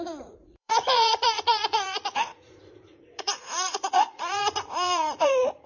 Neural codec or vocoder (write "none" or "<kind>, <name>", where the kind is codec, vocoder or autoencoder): vocoder, Vocos